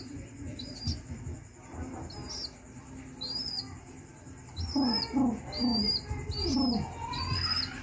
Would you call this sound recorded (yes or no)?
yes